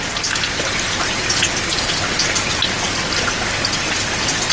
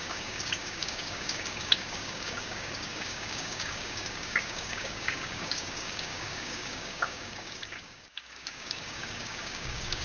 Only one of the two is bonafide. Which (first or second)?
first